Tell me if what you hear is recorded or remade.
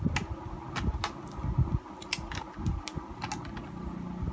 recorded